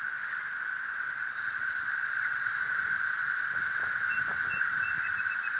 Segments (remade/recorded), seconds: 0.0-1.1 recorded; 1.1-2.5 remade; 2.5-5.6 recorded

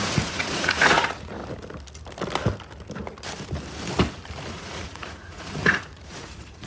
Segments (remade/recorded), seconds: 0.0-1.4 remade; 1.4-4.5 recorded; 4.5-6.7 remade

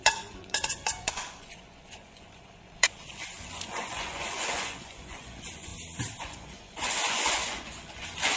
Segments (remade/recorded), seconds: 0.0-5.7 remade; 5.7-6.2 recorded; 6.2-8.4 remade

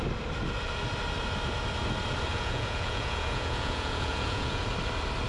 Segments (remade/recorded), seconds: 0.0-2.3 recorded; 2.3-4.6 remade; 4.6-5.3 recorded

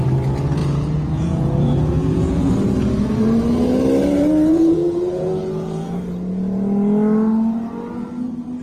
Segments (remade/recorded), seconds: 0.0-0.6 recorded; 0.6-2.5 remade; 2.5-4.5 recorded; 4.5-6.0 remade; 6.0-8.6 recorded

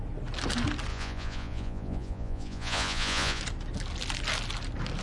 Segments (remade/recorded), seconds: 0.0-0.9 recorded; 0.9-3.4 remade; 3.4-5.0 recorded

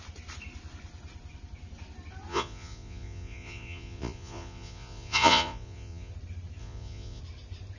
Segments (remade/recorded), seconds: 0.0-2.3 recorded; 2.3-6.1 remade; 6.1-6.6 recorded; 6.6-7.2 remade; 7.2-7.8 recorded